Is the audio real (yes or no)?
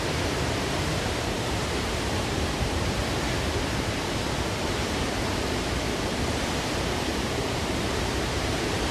no